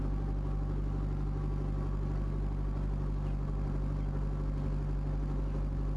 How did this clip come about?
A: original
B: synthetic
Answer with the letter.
A